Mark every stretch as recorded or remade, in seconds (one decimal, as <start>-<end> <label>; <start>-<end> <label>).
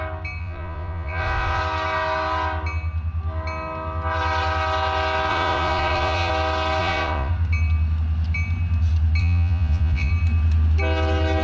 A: 0.0-0.4 recorded; 0.4-1.6 remade; 1.6-5.3 recorded; 5.3-6.3 remade; 6.3-6.8 recorded; 6.8-7.3 remade; 7.3-9.2 recorded; 9.2-10.1 remade; 10.1-11.4 recorded